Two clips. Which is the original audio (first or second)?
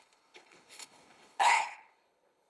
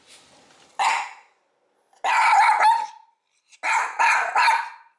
second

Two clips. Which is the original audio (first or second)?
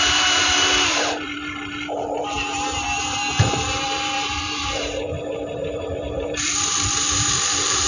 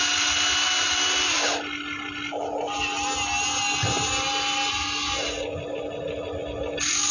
second